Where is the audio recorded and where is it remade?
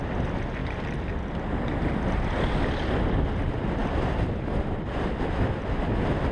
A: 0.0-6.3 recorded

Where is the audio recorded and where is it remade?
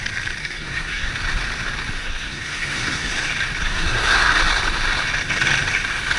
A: 0.0-0.4 recorded; 0.4-1.1 remade; 1.1-2.0 recorded; 2.0-3.1 remade; 3.1-3.6 recorded; 3.6-4.3 remade; 4.3-6.2 recorded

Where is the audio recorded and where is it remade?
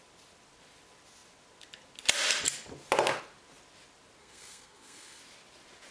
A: 0.0-4.2 recorded; 4.2-5.2 remade; 5.2-5.9 recorded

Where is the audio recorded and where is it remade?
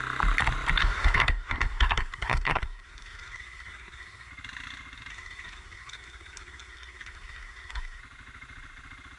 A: 0.0-0.8 recorded; 0.8-4.3 remade; 4.3-5.1 recorded; 5.1-8.0 remade; 8.0-9.2 recorded